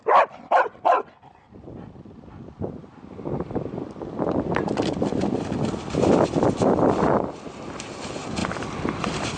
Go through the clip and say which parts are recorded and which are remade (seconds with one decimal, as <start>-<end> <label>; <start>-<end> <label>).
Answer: 0.0-9.4 recorded